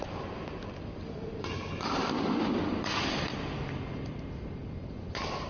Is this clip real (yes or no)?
yes